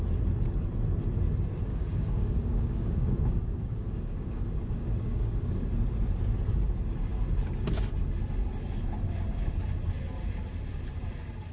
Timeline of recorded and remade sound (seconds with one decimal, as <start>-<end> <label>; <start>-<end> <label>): 0.0-1.7 recorded; 1.7-5.7 remade; 5.7-11.5 recorded